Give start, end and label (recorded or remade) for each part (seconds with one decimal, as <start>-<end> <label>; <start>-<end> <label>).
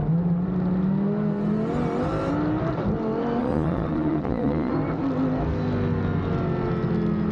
0.0-3.4 recorded; 3.4-4.7 remade; 4.7-7.3 recorded